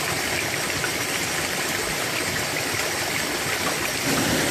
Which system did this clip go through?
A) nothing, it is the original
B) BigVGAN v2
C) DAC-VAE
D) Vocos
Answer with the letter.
A